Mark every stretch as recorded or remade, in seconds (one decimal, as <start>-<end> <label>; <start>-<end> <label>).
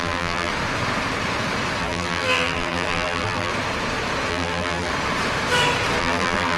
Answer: 0.0-0.5 remade; 0.5-1.8 recorded; 1.8-3.5 remade; 3.5-4.3 recorded; 4.3-4.9 remade; 4.9-6.0 recorded; 6.0-6.6 remade